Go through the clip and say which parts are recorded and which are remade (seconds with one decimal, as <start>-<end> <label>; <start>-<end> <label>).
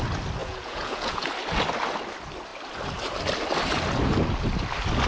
0.0-0.4 recorded; 0.4-1.3 remade; 1.3-5.1 recorded